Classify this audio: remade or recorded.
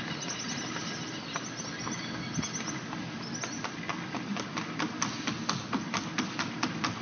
recorded